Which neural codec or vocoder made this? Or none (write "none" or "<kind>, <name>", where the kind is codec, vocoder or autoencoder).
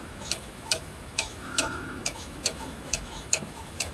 autoencoder, DAC-VAE